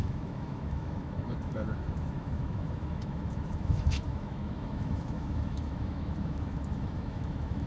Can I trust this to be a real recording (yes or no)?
no